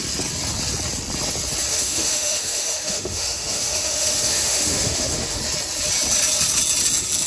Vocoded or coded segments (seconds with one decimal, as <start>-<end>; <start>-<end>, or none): 1.7-5.4